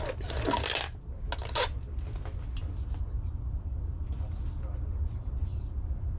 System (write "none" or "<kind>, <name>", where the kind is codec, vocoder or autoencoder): none